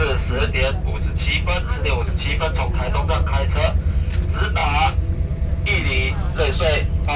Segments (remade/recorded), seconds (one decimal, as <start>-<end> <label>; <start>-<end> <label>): 0.0-7.2 recorded